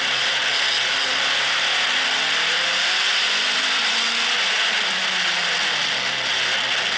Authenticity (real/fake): real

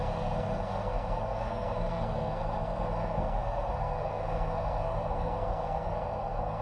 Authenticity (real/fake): fake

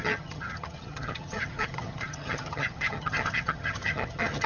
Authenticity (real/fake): fake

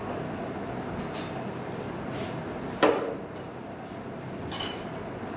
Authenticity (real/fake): real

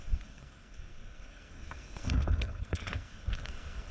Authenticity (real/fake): fake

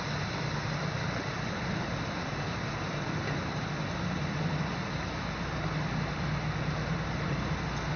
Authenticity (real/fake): real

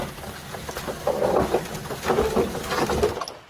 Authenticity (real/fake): real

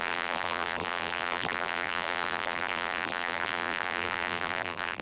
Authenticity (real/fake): fake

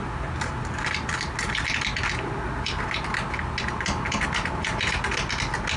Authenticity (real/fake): real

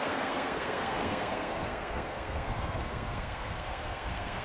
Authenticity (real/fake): fake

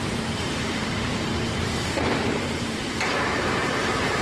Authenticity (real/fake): fake